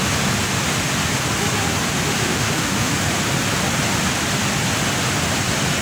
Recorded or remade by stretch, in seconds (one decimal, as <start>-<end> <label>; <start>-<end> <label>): 0.0-2.2 recorded; 2.2-2.9 remade; 2.9-5.8 recorded